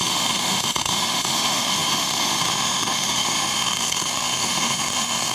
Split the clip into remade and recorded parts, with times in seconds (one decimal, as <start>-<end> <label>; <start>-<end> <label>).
0.0-5.3 remade